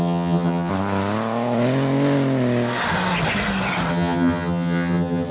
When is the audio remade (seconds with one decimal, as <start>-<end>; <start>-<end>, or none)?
0.0-0.7; 3.9-5.3